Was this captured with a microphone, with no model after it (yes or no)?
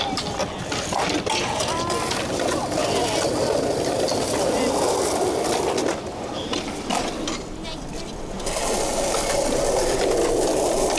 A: yes